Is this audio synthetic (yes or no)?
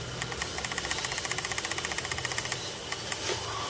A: no